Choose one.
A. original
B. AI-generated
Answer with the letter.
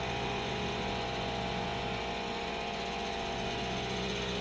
B